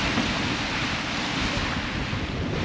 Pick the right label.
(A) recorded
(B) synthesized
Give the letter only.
A